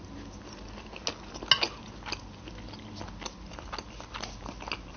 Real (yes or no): yes